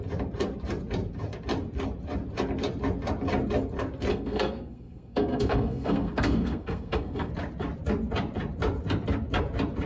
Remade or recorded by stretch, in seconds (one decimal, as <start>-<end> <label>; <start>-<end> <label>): 0.0-4.1 recorded; 4.1-7.3 remade; 7.3-9.9 recorded